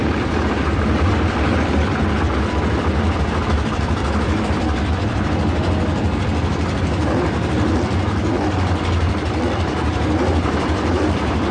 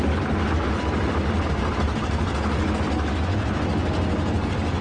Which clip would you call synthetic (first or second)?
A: first